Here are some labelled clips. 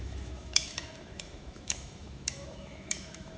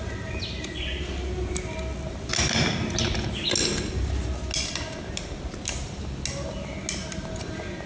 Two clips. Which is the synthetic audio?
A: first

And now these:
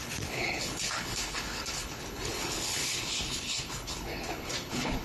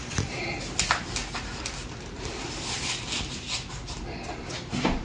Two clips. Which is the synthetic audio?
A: first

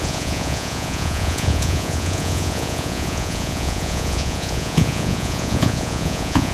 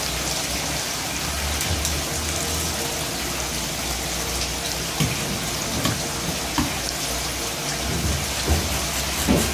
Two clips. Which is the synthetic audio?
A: first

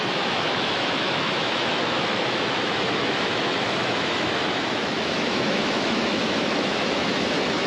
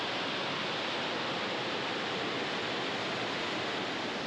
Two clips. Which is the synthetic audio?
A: first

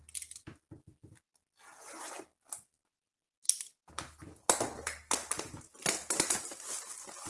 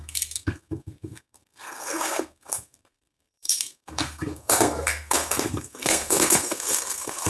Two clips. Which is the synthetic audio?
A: second